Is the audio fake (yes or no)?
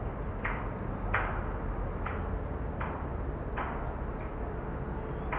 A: no